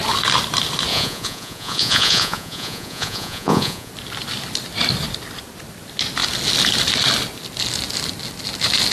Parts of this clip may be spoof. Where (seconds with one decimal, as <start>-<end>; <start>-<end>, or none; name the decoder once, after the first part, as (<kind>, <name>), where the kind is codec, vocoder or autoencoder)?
0.9-3.9 (vocoder, Vocos)